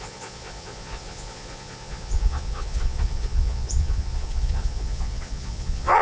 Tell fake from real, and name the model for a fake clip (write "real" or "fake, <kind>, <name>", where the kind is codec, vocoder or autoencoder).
fake, vocoder, Vocos